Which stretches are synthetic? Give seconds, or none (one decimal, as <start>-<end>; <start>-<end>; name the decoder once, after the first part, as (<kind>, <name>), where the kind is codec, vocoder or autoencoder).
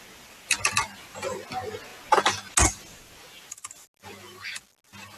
none